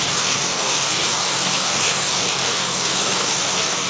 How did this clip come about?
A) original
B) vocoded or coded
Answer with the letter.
B